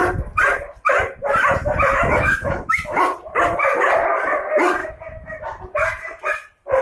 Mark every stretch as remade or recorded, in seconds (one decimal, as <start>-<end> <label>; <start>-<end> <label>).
0.0-1.9 recorded; 1.9-3.0 remade; 3.0-4.8 recorded; 4.8-5.6 remade; 5.6-6.8 recorded